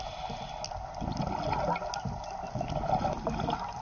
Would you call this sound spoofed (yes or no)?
no